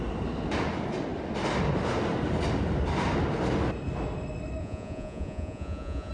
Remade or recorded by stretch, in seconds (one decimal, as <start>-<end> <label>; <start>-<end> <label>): 0.0-4.6 recorded; 4.6-6.1 remade